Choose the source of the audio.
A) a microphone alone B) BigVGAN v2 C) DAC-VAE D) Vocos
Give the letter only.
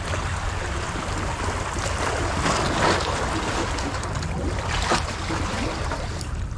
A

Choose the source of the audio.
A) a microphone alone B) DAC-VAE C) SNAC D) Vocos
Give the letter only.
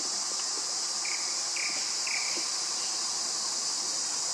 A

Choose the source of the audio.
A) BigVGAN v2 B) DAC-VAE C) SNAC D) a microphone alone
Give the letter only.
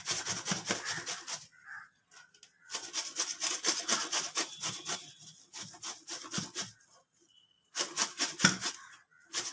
D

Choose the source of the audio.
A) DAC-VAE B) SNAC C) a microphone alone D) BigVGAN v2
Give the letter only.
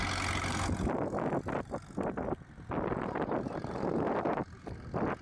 C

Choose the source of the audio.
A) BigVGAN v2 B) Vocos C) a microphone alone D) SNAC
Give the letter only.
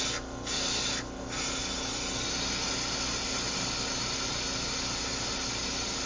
C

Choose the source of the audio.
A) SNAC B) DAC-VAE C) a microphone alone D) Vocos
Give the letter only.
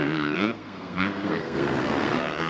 A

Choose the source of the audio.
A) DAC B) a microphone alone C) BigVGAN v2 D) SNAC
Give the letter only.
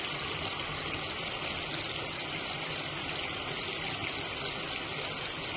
B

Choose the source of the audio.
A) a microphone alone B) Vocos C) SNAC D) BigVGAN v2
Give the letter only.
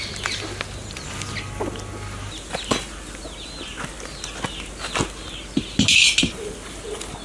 A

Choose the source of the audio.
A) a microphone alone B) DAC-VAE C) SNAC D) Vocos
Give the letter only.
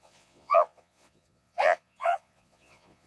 D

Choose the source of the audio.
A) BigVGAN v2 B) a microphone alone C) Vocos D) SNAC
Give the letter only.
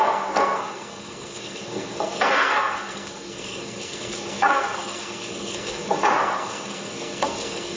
D